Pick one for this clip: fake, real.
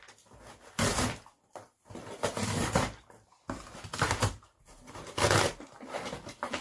real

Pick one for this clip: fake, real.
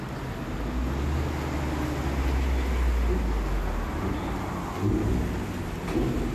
real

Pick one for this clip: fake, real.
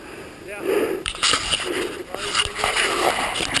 fake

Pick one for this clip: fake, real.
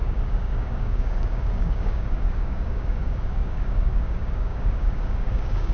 fake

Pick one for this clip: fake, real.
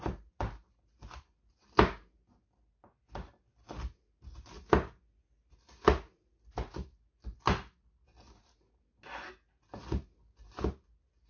real